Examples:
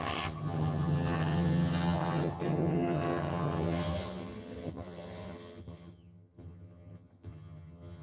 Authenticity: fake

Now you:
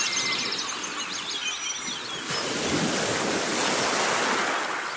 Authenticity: real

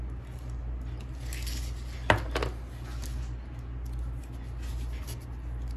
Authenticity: real